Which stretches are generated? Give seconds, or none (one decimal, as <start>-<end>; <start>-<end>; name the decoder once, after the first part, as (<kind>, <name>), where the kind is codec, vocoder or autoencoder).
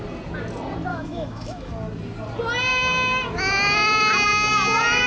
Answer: 0.9-1.7 (autoencoder, DAC-VAE)